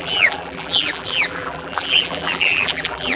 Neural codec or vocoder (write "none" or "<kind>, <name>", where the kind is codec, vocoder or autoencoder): vocoder, BigVGAN v2